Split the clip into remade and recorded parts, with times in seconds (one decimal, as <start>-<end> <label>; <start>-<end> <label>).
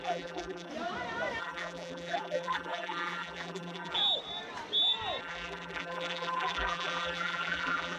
0.0-0.7 remade; 0.7-1.4 recorded; 1.4-4.0 remade; 4.0-5.2 recorded; 5.2-8.0 remade